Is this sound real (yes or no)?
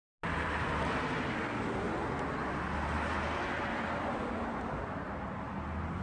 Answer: yes